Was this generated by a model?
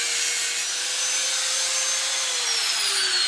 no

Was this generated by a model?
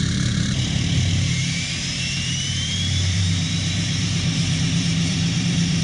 yes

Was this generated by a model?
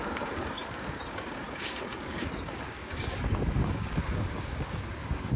yes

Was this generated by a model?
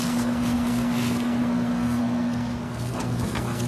yes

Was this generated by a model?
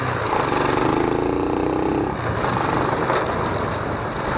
no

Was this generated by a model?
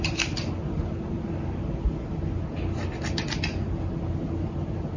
no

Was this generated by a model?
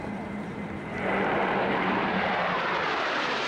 yes